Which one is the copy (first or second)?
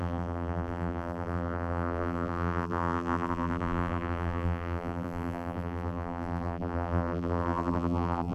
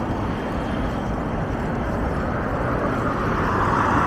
first